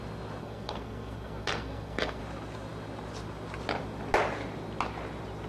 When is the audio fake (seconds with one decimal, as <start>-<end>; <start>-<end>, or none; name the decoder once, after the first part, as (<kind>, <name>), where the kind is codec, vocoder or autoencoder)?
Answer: 0.4-2.2 (codec, SNAC)